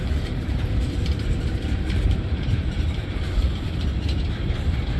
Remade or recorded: remade